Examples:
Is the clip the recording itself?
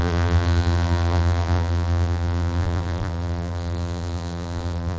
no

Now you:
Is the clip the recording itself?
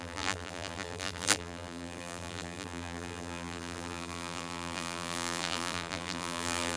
no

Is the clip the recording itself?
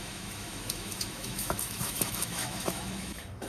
no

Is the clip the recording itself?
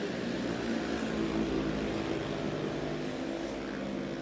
yes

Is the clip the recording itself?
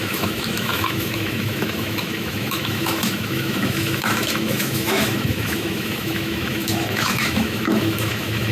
no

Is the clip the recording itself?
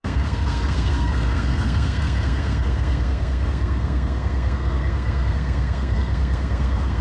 no